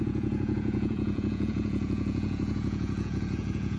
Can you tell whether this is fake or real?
fake